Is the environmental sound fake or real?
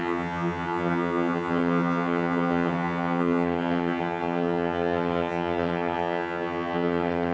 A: fake